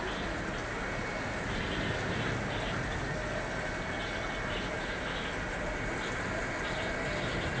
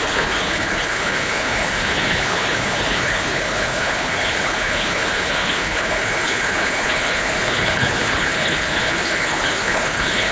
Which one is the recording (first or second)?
first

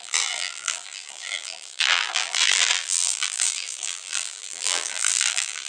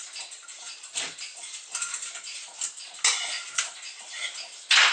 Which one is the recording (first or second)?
second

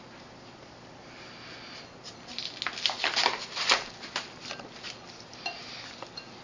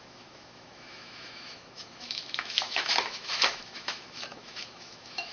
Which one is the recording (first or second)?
first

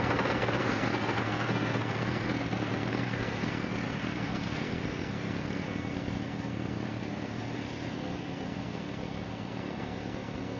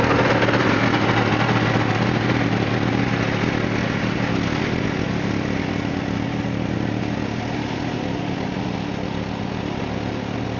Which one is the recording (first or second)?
second